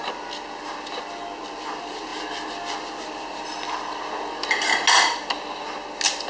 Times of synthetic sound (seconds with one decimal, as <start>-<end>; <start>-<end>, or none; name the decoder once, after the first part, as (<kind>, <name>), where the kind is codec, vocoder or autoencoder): none